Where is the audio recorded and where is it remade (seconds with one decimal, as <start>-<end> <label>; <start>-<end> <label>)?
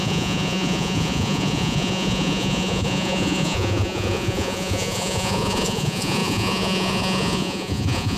0.0-8.2 remade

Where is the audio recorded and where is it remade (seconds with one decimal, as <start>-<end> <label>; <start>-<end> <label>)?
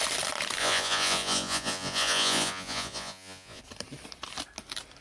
0.0-0.6 recorded; 0.6-3.6 remade; 3.6-5.0 recorded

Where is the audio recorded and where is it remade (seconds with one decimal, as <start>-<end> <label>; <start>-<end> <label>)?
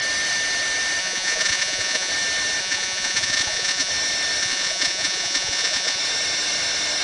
0.0-1.0 recorded; 1.0-2.1 remade; 2.1-2.6 recorded; 2.6-3.9 remade; 3.9-4.4 recorded; 4.4-6.0 remade; 6.0-7.0 recorded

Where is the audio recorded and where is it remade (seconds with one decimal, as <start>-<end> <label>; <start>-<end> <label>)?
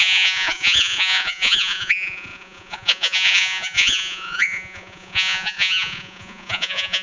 0.0-7.0 remade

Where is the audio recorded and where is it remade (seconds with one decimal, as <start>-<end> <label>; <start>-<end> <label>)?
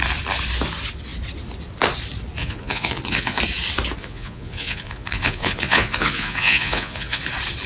0.0-2.4 recorded; 2.4-3.4 remade; 3.4-4.0 recorded; 4.0-7.2 remade; 7.2-7.7 recorded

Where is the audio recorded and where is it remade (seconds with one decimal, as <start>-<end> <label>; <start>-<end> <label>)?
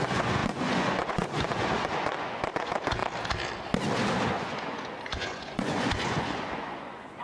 0.0-3.0 remade; 3.0-4.3 recorded; 4.3-7.2 remade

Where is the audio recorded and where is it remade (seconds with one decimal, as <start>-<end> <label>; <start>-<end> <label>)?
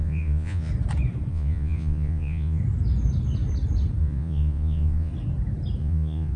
0.0-0.7 remade; 0.7-1.3 recorded; 1.3-2.6 remade; 2.6-4.0 recorded; 4.0-5.1 remade; 5.1-5.8 recorded; 5.8-6.4 remade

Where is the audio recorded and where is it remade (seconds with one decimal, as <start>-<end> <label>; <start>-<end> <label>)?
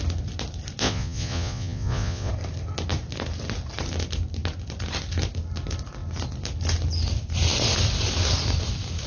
0.0-0.8 recorded; 0.8-2.3 remade; 2.3-9.1 recorded